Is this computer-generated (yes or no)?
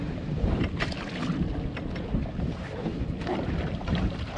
no